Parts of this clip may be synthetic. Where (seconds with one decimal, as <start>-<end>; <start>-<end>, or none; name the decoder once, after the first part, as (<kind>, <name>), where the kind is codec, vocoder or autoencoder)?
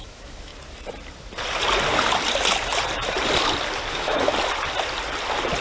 0.0-0.5 (autoencoder, DAC-VAE); 3.9-4.3